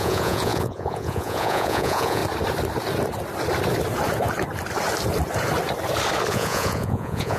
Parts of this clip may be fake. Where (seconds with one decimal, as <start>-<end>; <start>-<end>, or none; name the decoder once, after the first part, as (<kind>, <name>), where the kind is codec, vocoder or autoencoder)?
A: 0.0-2.2 (vocoder, Vocos); 6.3-7.4